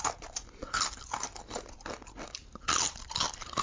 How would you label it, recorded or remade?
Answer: recorded